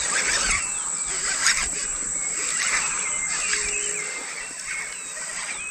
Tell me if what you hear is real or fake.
real